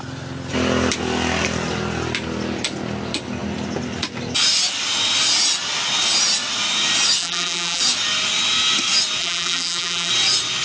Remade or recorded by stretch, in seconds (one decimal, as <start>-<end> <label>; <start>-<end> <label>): 0.0-7.2 recorded; 7.2-7.8 remade; 7.8-9.2 recorded; 9.2-10.1 remade; 10.1-10.6 recorded